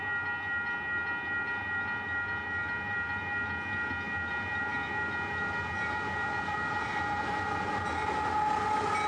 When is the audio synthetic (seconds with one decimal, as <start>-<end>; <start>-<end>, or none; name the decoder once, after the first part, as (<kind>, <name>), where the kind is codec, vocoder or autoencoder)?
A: none